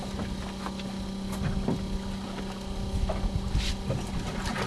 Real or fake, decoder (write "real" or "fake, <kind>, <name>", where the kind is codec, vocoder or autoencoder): real